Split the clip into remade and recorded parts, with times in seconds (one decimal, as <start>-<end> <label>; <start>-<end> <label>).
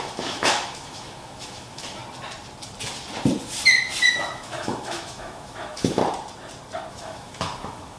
0.0-2.0 remade; 2.0-4.1 recorded; 4.1-6.0 remade; 6.0-6.9 recorded; 6.9-8.0 remade